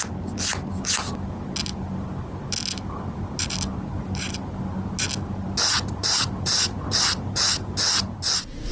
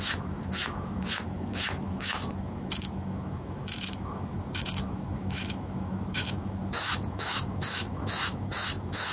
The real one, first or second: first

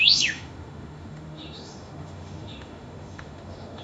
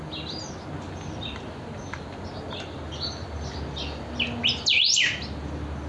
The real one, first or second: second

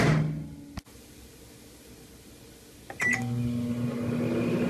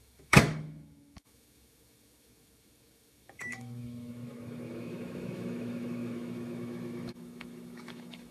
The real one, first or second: first